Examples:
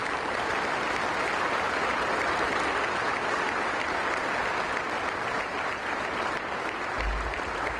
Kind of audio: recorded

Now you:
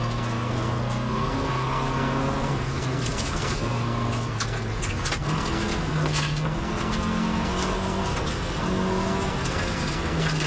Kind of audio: remade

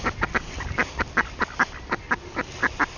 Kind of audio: recorded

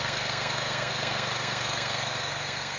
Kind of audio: remade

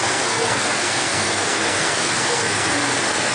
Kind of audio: remade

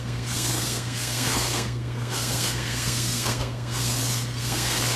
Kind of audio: remade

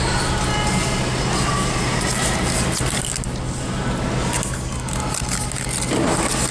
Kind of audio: recorded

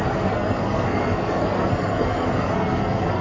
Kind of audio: remade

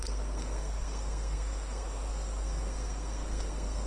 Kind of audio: remade